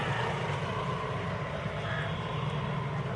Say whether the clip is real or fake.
real